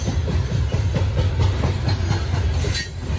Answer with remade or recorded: recorded